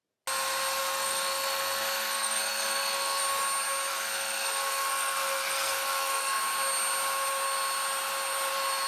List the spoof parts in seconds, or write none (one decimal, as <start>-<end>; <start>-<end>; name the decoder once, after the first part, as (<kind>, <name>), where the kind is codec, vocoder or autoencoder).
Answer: 0.8-3.2 (codec, SNAC); 3.9-6.4